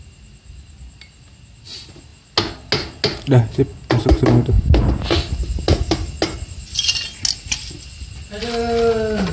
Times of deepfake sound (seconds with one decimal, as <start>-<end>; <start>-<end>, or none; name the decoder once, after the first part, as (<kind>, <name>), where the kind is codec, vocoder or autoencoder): none